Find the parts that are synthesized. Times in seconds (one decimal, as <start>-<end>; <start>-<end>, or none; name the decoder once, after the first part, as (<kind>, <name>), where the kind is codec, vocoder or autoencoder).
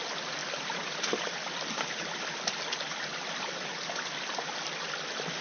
3.1-3.7 (vocoder, BigVGAN v2)